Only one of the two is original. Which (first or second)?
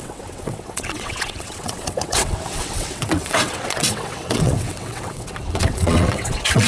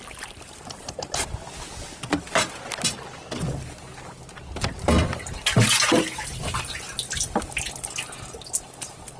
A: second